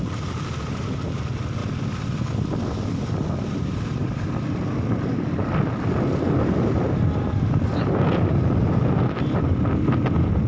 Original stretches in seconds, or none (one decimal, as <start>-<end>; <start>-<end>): 0.0-1.6; 2.6-4.0; 7.8-10.5